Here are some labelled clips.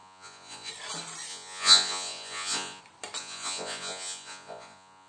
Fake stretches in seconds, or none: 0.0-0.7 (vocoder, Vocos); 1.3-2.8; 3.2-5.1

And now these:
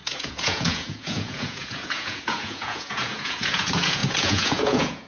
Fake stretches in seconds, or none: 0.0-5.1 (vocoder, Vocos)